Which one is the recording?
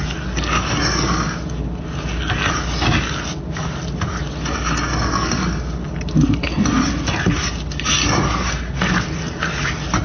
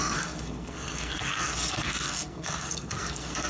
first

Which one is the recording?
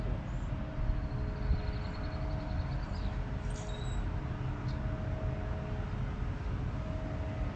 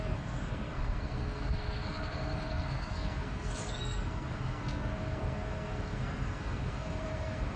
first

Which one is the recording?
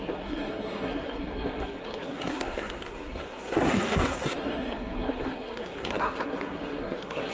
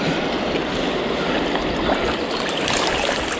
second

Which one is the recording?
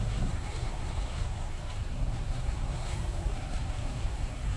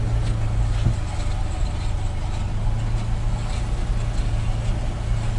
second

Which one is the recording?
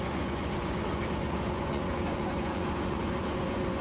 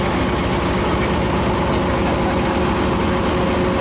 second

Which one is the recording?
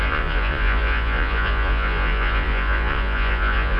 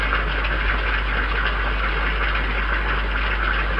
second